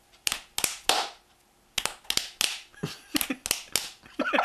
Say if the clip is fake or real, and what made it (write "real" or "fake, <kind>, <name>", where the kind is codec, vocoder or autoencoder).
real